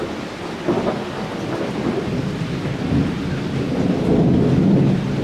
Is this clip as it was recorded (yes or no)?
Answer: yes